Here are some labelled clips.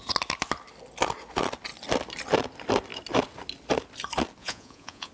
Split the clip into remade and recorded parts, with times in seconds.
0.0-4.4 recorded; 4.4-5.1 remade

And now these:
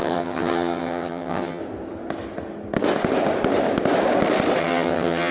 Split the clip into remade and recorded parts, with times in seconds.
0.0-1.6 remade; 1.6-4.6 recorded; 4.6-5.3 remade

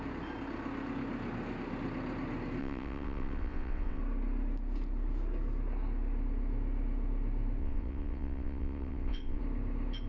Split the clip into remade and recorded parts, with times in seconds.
0.0-2.6 recorded; 2.6-4.0 remade; 4.0-7.6 recorded; 7.6-9.4 remade; 9.4-10.1 recorded

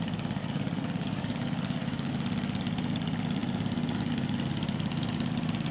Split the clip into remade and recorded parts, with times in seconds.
0.0-0.4 recorded; 0.4-2.1 remade; 2.1-5.7 recorded